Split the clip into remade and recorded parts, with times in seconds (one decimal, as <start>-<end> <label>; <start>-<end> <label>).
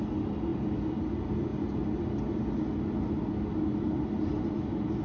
0.0-5.0 recorded